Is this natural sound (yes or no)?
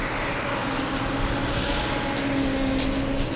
yes